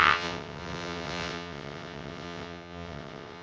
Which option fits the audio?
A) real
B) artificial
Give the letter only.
B